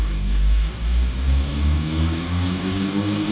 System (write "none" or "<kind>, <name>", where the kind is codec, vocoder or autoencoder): codec, DAC